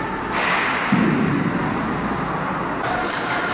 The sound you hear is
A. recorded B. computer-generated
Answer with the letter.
A